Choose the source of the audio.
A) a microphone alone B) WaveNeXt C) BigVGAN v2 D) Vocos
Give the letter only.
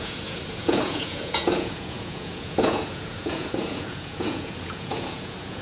D